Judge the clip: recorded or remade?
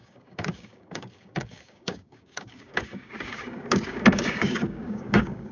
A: remade